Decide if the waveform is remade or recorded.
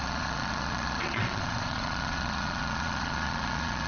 remade